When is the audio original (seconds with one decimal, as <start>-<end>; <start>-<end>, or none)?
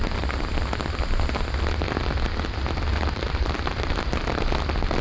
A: 0.0-2.9; 3.9-5.0